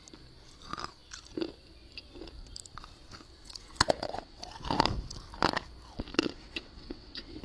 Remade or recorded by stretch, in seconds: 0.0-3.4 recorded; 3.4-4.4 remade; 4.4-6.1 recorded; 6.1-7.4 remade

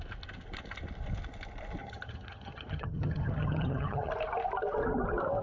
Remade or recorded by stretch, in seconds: 0.0-1.8 recorded; 1.8-4.1 remade; 4.1-5.4 recorded

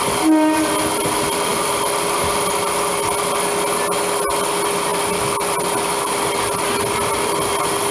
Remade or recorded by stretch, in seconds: 0.0-7.9 recorded

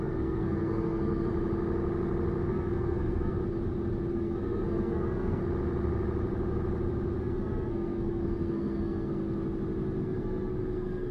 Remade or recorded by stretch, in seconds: 0.0-1.3 remade; 1.3-2.5 recorded; 2.5-3.4 remade; 3.4-4.1 recorded; 4.1-5.4 remade; 5.4-7.2 recorded; 7.2-9.2 remade; 9.2-10.0 recorded; 10.0-11.1 remade